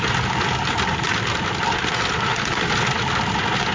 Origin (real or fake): real